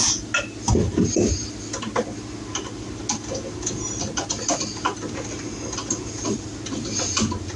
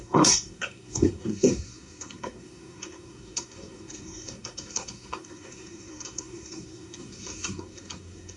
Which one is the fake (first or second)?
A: second